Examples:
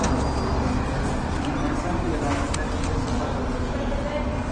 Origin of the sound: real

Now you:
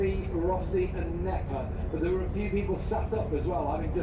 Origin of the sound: real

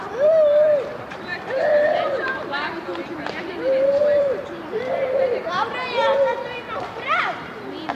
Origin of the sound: fake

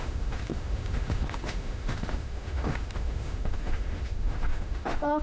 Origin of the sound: fake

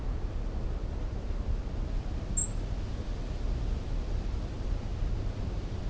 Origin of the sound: real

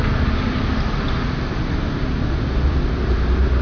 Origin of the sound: real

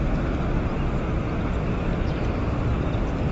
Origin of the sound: real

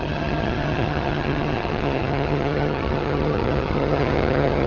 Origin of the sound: fake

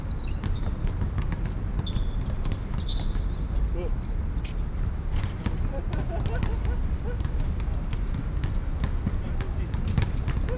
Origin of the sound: real